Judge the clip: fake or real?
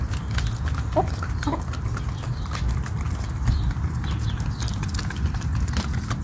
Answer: real